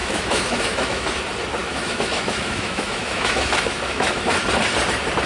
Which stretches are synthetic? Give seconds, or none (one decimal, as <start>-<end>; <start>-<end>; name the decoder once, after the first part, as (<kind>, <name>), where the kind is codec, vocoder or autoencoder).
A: 0.0-1.2 (autoencoder, DAC-VAE); 1.6-4.4